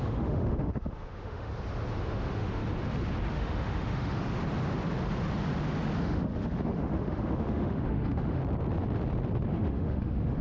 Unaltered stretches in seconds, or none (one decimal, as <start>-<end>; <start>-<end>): 1.5-2.0; 2.6-3.3; 4.4-6.0; 8.4-9.5